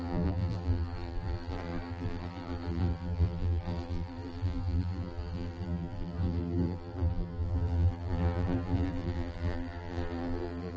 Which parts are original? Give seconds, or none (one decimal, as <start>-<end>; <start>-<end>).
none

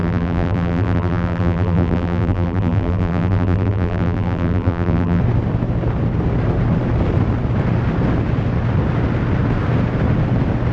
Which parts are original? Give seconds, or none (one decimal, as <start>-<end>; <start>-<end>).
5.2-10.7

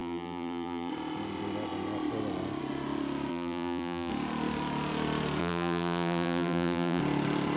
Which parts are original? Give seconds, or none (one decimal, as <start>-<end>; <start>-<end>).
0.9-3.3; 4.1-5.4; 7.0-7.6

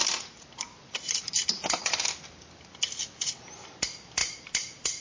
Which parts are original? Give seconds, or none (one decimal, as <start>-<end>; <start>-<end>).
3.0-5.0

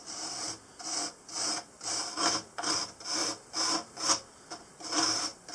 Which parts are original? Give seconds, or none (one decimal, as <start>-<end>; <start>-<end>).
0.0-5.5

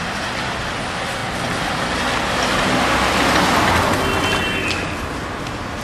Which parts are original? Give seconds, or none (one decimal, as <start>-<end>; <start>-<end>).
0.0-5.8

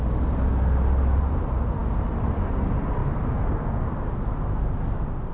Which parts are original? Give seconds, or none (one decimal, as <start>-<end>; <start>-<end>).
0.0-5.3

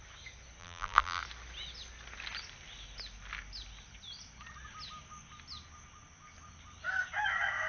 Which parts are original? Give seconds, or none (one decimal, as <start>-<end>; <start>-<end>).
0.0-0.6; 1.2-7.7